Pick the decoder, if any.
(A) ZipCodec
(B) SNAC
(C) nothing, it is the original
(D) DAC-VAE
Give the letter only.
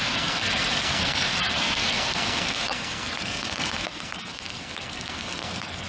B